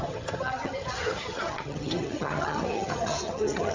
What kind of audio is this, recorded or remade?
remade